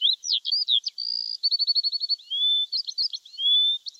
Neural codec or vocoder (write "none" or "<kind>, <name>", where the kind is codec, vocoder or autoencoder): none